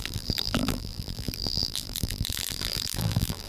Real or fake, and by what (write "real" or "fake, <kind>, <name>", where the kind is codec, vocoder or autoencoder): fake, vocoder, BigVGAN v2